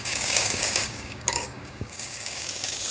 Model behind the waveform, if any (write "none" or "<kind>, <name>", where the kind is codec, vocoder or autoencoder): codec, DAC